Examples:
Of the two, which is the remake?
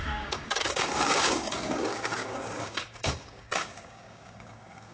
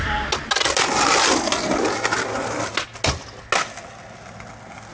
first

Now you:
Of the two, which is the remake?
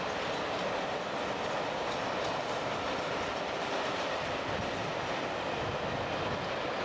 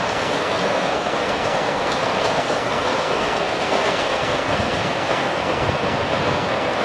second